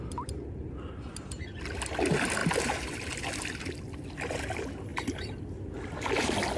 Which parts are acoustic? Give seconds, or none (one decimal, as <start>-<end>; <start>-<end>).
0.0-6.6